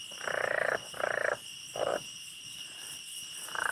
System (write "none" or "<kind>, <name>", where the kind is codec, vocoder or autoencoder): vocoder, BigVGAN v2